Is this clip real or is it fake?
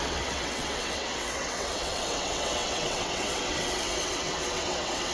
fake